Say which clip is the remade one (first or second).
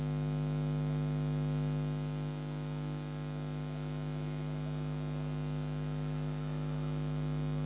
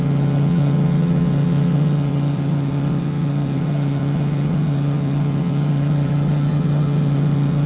second